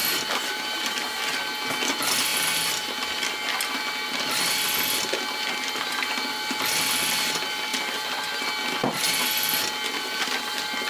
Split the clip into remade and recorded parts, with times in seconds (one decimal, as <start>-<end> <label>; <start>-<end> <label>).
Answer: 0.0-1.3 remade; 1.3-7.7 recorded; 7.7-8.2 remade; 8.2-10.9 recorded